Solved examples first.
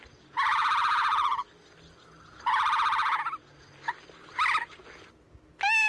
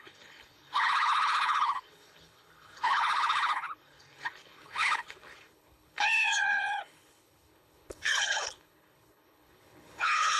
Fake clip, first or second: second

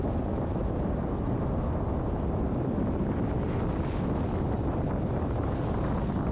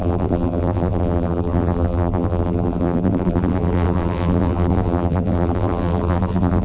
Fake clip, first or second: second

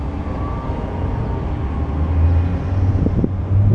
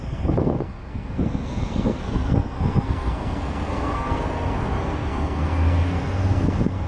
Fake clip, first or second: second